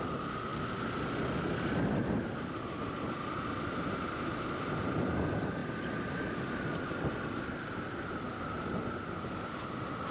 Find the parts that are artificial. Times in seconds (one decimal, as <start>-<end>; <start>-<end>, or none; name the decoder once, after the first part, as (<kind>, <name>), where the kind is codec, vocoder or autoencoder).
none

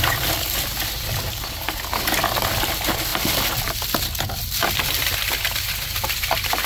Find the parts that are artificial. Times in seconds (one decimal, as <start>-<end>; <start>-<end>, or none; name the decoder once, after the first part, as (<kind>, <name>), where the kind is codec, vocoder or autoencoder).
none

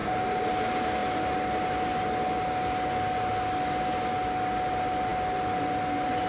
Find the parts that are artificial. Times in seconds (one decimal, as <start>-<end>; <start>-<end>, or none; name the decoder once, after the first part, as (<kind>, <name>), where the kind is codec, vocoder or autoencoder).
none

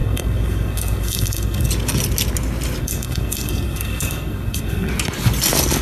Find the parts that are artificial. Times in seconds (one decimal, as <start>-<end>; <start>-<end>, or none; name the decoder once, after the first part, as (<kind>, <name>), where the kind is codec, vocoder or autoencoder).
0.0-1.7 (codec, SNAC); 2.8-4.9